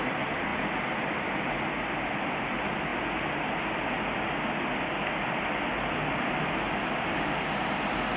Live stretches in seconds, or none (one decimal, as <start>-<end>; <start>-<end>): 0.0-8.2